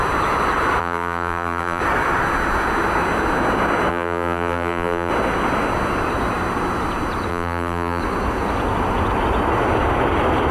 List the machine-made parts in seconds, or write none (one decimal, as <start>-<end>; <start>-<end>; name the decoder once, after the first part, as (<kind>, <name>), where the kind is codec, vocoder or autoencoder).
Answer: 0.8-1.8 (vocoder, BigVGAN v2); 3.9-5.1; 7.3-8.0

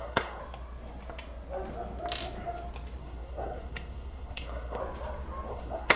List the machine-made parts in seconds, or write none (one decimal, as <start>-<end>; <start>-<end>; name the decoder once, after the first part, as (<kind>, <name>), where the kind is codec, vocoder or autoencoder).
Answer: 0.0-0.4 (codec, SNAC); 3.0-4.8; 5.5-6.0

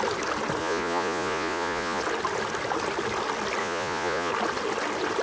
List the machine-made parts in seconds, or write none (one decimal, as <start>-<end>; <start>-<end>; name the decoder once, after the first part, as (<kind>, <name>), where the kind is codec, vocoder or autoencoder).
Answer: 0.6-2.0 (vocoder, Vocos); 3.6-4.3